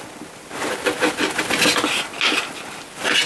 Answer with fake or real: real